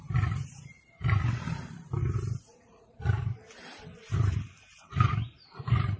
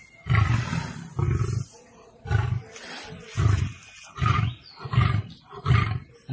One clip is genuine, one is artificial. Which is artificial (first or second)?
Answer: first